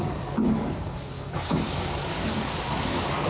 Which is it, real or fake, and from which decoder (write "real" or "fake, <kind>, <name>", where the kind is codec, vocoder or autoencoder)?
fake, codec, DAC